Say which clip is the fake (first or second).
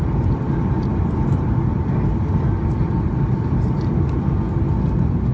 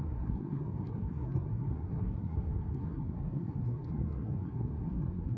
second